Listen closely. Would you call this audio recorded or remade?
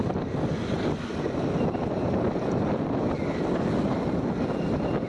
recorded